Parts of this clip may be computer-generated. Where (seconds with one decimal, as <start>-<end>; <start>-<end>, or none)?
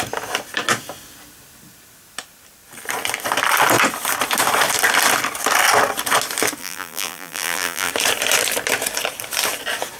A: 6.6-7.9